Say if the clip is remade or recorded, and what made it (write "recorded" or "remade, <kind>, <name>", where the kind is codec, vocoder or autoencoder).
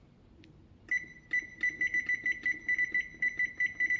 recorded